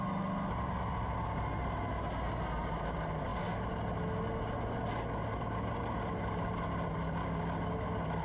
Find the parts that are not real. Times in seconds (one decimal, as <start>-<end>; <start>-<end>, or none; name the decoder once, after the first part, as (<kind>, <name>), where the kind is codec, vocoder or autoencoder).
none